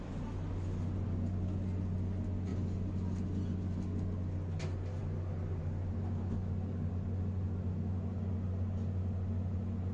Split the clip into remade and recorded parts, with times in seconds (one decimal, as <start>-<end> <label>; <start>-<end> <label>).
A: 0.0-9.9 recorded